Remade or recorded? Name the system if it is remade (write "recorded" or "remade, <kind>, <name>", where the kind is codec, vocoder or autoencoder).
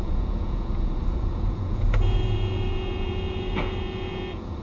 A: remade, vocoder, Vocos